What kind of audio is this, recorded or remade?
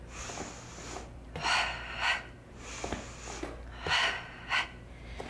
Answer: recorded